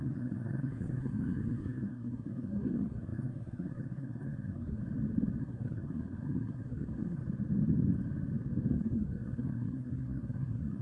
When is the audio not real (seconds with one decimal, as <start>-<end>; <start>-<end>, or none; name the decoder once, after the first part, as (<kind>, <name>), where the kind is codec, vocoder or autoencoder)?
0.0-4.8 (codec, SNAC); 5.4-7.2; 8.7-10.8